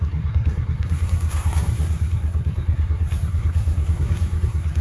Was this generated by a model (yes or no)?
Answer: yes